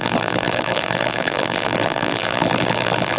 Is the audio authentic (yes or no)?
no